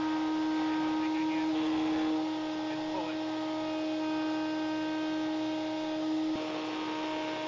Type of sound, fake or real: real